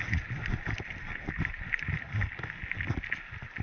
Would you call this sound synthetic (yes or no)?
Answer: no